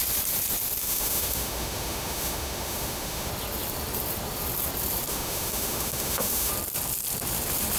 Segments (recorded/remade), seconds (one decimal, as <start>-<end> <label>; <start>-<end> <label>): 0.0-0.8 recorded; 0.8-3.3 remade; 3.3-5.1 recorded; 5.1-6.5 remade; 6.5-7.8 recorded